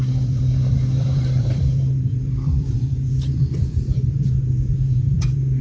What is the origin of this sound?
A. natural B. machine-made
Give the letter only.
B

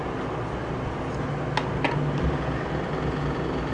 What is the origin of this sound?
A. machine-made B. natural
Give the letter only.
B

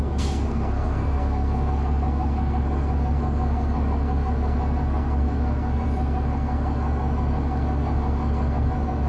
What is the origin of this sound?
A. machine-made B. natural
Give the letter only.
A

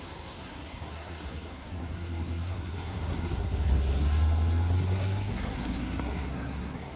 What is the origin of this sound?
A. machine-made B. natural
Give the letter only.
A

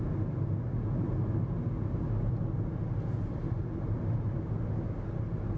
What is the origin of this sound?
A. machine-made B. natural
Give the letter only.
B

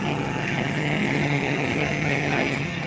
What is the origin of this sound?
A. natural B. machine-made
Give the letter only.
B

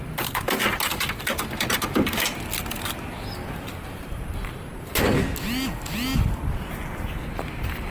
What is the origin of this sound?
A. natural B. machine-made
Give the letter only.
A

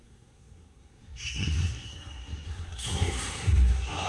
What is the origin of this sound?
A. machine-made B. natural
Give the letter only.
A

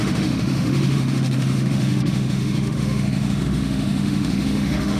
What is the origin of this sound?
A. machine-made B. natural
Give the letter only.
A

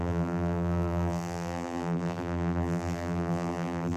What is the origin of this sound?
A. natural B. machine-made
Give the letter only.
B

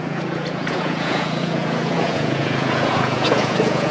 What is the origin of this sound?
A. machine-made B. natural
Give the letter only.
A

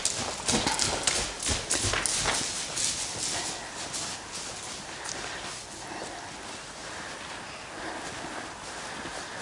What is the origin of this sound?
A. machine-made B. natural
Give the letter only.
B